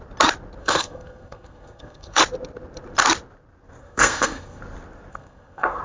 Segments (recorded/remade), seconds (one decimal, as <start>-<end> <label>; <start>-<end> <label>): 0.0-0.6 recorded; 0.6-2.2 remade; 2.2-3.8 recorded; 3.8-4.6 remade; 4.6-5.1 recorded; 5.1-5.8 remade